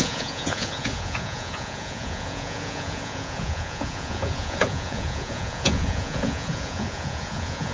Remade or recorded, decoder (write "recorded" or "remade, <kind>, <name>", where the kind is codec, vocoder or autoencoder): remade, vocoder, Vocos